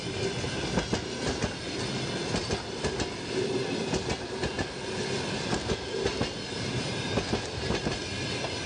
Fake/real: real